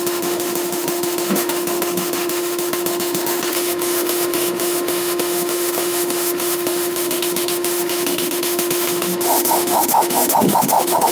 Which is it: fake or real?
fake